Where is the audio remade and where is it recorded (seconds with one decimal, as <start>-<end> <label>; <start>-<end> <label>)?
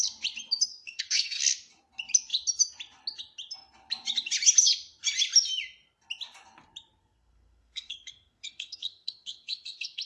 0.0-0.7 recorded; 0.7-1.4 remade; 1.4-7.0 recorded; 7.0-10.0 remade